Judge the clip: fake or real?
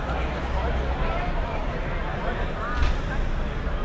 real